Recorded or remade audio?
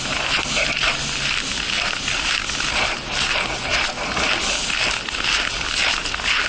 recorded